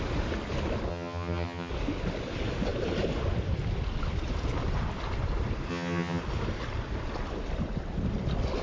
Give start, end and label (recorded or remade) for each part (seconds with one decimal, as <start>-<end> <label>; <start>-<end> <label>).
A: 0.0-0.9 recorded; 0.9-1.7 remade; 1.7-5.7 recorded; 5.7-6.2 remade; 6.2-8.6 recorded